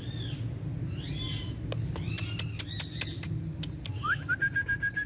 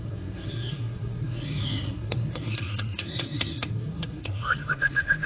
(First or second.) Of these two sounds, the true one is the first